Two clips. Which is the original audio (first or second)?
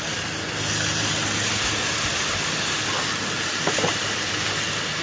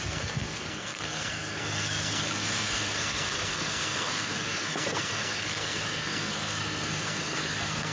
first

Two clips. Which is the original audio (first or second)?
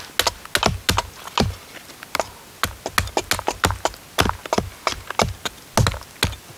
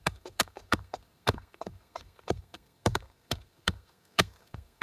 first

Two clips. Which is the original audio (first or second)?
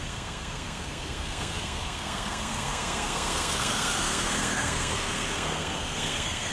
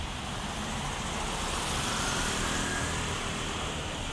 second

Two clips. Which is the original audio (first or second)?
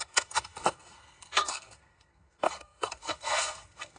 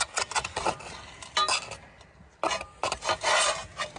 second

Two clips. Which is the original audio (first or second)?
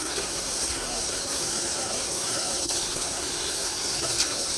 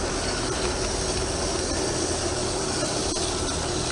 second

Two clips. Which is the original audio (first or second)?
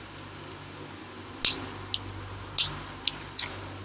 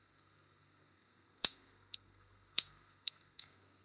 first